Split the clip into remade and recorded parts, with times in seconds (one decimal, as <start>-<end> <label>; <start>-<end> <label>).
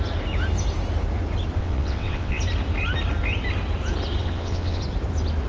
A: 0.0-1.6 recorded; 1.6-2.4 remade; 2.4-4.2 recorded; 4.2-4.8 remade; 4.8-5.5 recorded